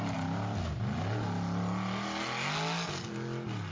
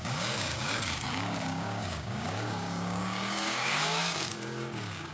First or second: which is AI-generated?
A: second